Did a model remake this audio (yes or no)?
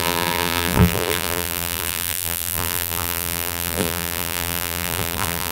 yes